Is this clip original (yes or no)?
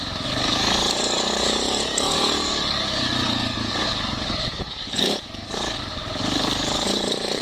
no